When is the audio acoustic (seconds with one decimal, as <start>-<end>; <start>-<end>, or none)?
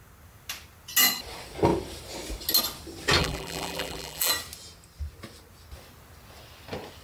0.0-3.2; 4.3-7.0